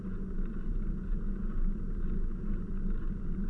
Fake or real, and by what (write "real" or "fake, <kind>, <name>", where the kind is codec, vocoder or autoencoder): real